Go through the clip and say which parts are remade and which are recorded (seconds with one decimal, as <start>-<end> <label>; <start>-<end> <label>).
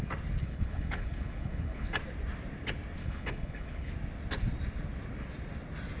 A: 0.0-0.4 recorded; 0.4-1.9 remade; 1.9-3.0 recorded; 3.0-3.9 remade; 3.9-6.0 recorded